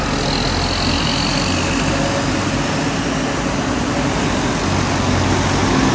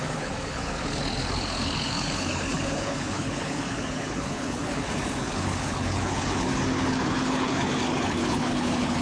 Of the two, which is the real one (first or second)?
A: first